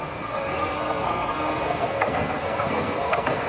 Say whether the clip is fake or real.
fake